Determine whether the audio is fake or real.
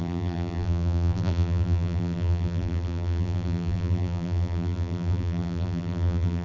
fake